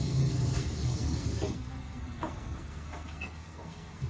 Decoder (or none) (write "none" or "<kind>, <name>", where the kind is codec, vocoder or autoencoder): codec, SNAC